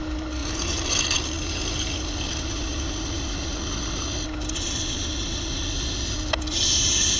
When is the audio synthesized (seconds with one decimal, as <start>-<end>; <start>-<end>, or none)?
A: 0.0-3.5